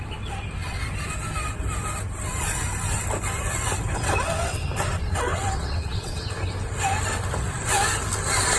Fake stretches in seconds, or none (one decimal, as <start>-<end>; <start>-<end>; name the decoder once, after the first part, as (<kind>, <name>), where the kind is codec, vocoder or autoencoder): 5.3-6.3 (vocoder, WaveNeXt)